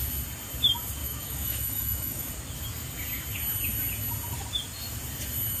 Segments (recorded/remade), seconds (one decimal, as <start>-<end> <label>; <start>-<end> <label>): 0.0-1.0 recorded; 1.0-2.3 remade; 2.3-5.6 recorded